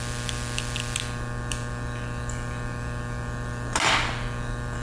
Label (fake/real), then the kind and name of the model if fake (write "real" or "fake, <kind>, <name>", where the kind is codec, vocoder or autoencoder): real